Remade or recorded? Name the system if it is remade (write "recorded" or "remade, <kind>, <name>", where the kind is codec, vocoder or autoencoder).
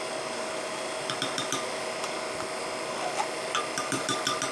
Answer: recorded